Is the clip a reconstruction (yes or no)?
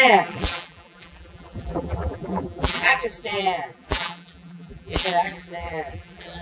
yes